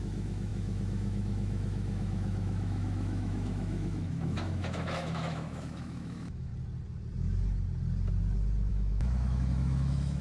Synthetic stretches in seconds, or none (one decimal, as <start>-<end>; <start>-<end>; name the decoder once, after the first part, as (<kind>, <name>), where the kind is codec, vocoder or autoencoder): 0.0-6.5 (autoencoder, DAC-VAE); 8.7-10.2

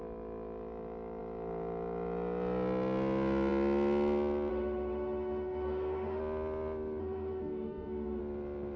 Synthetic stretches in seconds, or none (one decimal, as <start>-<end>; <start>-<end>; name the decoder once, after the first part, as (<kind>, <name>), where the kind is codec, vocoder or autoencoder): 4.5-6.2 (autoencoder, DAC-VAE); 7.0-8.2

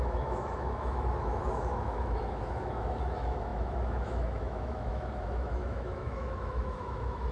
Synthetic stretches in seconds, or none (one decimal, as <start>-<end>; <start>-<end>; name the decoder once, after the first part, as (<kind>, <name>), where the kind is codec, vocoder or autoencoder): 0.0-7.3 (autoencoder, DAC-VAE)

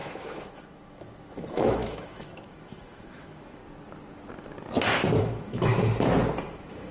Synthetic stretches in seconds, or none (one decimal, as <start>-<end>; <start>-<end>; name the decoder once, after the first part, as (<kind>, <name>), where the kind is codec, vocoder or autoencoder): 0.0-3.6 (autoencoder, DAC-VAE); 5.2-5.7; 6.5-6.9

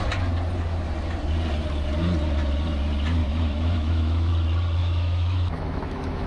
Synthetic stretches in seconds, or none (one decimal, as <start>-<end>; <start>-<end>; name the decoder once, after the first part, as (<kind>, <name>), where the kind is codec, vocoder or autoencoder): 3.2-4.3 (autoencoder, DAC-VAE); 4.8-6.3

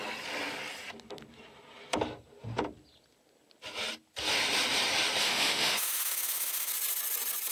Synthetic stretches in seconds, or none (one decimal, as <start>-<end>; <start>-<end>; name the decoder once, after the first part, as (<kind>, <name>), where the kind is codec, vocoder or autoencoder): 5.2-6.7 (autoencoder, DAC-VAE)

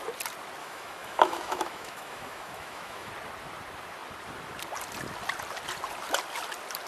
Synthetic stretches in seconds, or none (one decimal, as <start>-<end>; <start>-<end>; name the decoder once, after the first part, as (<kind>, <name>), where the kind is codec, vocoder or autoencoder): 0.6-3.1 (autoencoder, DAC-VAE)